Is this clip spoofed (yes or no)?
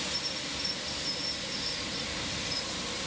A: no